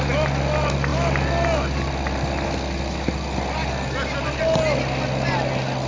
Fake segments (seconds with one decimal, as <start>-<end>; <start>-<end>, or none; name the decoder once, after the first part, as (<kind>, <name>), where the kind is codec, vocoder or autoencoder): none